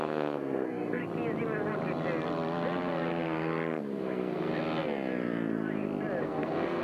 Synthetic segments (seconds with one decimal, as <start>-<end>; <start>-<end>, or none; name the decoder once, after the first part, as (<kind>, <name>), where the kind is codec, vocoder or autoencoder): 0.0-1.0 (codec, SNAC); 3.8-4.5; 6.2-6.8